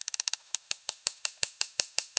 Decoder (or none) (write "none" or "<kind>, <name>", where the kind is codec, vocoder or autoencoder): autoencoder, DAC-VAE